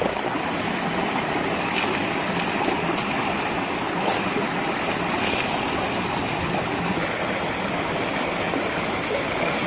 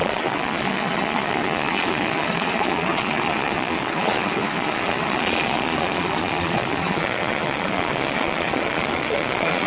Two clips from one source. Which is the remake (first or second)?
second